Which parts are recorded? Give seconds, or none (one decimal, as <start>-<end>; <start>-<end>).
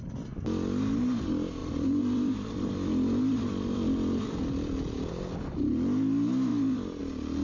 0.0-1.6; 5.1-6.5; 7.0-7.4